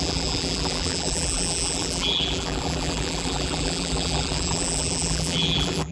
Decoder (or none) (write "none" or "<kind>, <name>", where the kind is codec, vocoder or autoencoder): vocoder, BigVGAN v2